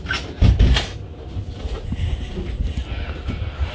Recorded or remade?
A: recorded